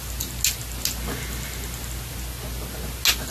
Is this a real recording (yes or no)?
yes